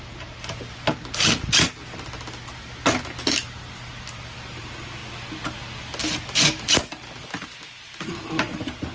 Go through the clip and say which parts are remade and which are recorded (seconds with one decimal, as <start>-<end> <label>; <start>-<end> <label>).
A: 0.0-8.9 recorded